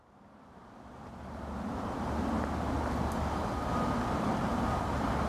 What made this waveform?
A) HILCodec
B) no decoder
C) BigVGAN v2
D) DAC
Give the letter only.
B